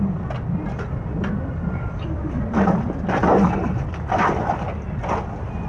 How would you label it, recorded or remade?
recorded